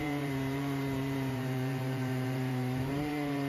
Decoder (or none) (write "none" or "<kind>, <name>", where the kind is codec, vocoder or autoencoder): vocoder, BigVGAN v2